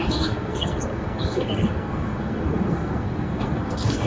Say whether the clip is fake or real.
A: fake